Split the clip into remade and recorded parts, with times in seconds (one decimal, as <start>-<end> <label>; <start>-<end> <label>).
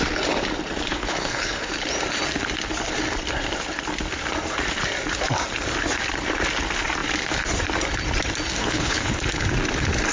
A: 0.0-0.9 recorded; 0.9-1.7 remade; 1.7-8.6 recorded; 8.6-9.2 remade; 9.2-10.1 recorded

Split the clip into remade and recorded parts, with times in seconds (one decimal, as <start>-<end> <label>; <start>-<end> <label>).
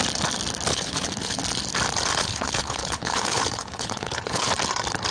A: 0.0-0.7 recorded; 0.7-1.4 remade; 1.4-2.2 recorded; 2.2-4.5 remade; 4.5-5.1 recorded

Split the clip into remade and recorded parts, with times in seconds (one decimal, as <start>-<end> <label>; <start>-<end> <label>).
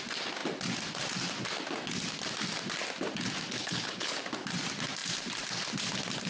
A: 0.0-3.6 recorded; 3.6-4.2 remade; 4.2-6.3 recorded